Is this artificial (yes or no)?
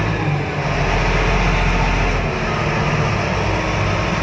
no